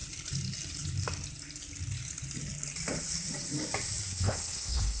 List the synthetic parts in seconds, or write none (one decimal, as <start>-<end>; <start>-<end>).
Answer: 4.1-5.0